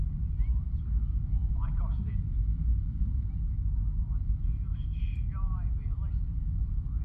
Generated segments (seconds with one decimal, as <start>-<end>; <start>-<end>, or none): 2.7-3.4